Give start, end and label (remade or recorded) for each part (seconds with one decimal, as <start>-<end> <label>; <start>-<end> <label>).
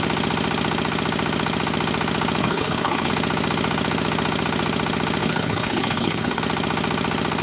0.0-2.4 recorded; 2.4-3.1 remade; 3.1-5.2 recorded; 5.2-6.4 remade; 6.4-7.4 recorded